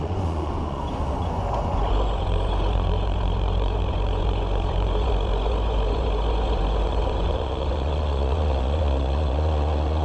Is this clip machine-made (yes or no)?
yes